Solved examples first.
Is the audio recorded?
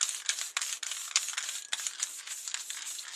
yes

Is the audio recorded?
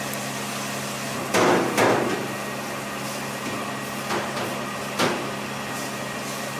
yes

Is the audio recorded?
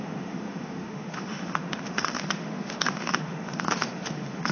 no